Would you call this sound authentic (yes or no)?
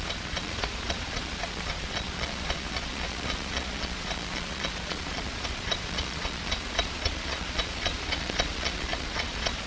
no